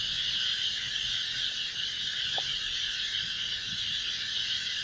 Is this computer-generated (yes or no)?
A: no